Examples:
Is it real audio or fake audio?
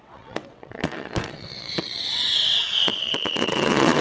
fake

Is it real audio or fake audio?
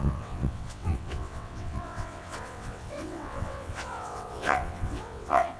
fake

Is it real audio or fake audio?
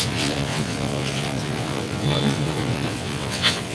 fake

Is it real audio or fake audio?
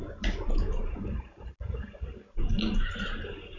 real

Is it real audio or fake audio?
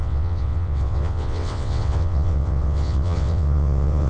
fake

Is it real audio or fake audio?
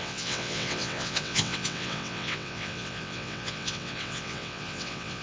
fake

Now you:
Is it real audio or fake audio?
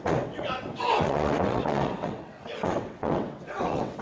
fake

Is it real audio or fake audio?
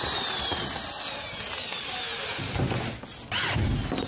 real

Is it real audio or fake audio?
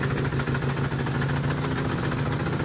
real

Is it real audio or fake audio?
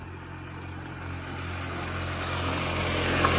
real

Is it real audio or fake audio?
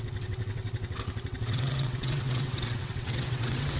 fake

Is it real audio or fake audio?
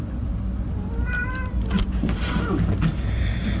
real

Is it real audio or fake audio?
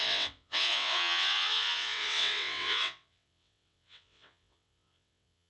fake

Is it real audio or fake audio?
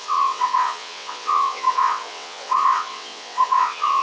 fake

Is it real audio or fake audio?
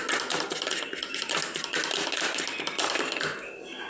real